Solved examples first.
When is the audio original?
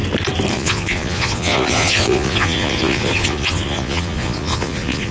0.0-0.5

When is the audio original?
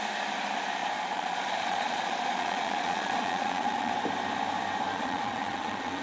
0.0-0.8; 3.9-4.9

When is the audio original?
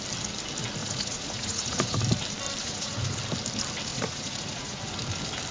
0.0-0.8; 2.0-2.6; 3.2-3.9; 4.8-5.5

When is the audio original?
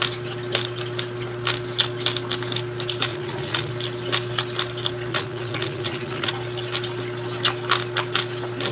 0.0-3.1; 3.7-5.1; 6.3-8.7